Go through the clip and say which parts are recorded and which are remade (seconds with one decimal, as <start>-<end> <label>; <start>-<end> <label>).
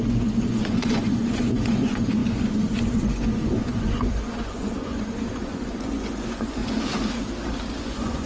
0.0-6.6 remade; 6.6-7.8 recorded; 7.8-8.3 remade